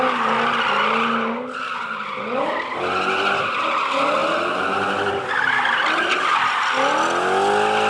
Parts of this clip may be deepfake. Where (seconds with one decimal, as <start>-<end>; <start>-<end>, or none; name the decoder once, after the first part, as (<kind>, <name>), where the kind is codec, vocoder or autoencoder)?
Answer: none